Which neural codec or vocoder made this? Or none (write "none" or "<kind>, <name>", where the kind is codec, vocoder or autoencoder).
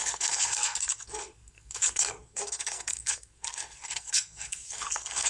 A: codec, SNAC